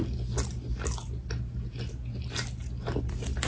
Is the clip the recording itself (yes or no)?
yes